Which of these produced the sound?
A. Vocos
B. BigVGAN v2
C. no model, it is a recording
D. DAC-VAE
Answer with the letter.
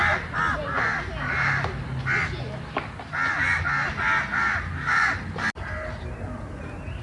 C